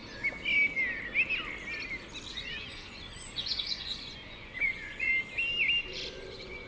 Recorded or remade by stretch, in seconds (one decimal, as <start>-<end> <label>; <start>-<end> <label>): 0.0-2.3 recorded; 2.3-5.1 remade; 5.1-5.9 recorded; 5.9-6.7 remade